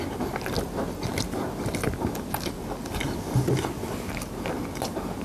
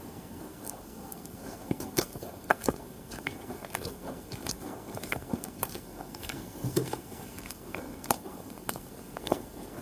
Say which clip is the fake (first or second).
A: second